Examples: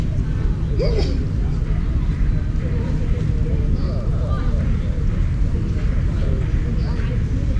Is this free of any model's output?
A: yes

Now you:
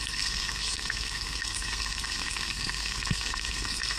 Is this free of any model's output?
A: no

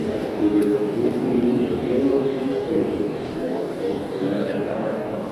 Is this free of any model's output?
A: no